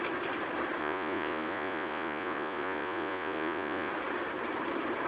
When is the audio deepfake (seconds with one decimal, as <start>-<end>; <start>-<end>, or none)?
0.8-3.9